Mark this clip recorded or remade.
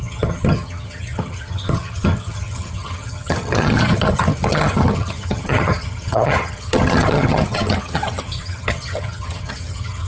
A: remade